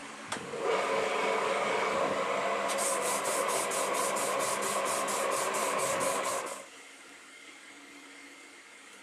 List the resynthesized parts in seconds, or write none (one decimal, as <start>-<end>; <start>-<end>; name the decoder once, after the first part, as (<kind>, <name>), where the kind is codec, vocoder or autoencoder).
0.0-2.2 (codec, DAC); 5.6-9.0